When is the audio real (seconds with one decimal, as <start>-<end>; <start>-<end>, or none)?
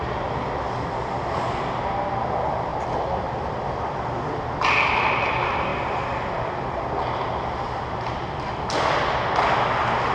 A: 0.0-10.1